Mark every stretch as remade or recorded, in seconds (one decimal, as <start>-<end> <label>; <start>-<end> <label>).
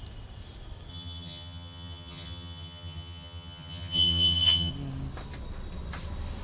0.0-0.9 recorded; 0.9-4.7 remade; 4.7-6.4 recorded